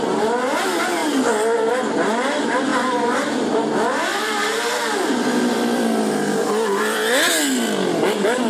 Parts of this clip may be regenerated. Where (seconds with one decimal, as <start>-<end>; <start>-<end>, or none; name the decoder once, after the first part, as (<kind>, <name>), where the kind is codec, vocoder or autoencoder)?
2.7-7.1 (vocoder, BigVGAN v2)